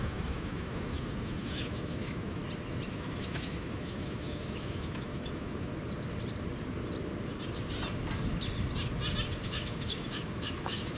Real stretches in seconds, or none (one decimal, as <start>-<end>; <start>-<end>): 2.4-2.9; 5.7-9.5